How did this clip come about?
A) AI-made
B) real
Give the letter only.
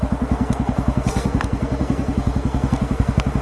A